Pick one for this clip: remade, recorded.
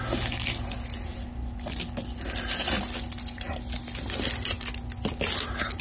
recorded